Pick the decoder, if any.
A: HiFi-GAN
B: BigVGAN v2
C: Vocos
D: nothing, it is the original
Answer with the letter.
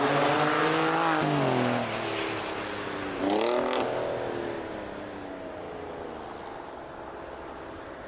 D